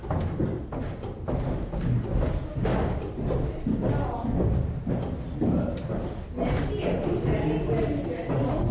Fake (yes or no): no